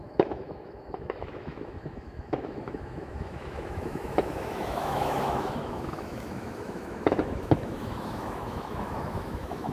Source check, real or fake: fake